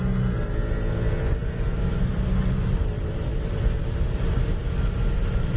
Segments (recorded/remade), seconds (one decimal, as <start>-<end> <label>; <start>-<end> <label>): 0.0-1.4 recorded; 1.4-3.8 remade; 3.8-5.6 recorded

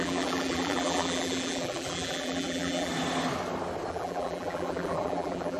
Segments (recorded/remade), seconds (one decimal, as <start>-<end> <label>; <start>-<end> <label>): 0.0-2.9 remade; 2.9-3.9 recorded; 3.9-5.6 remade